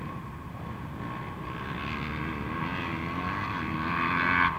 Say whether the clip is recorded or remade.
recorded